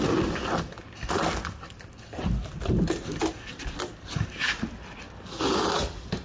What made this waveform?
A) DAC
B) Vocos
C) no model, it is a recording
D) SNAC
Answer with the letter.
C